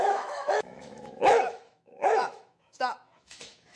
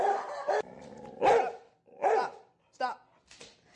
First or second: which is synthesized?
first